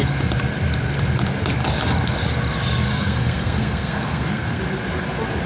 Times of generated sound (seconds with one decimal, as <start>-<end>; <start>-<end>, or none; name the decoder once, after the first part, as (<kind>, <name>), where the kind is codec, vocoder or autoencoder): 2.9-4.6 (codec, SNAC)